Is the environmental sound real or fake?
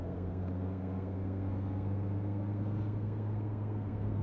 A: fake